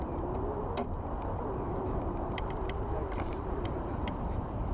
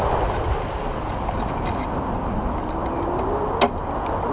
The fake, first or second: first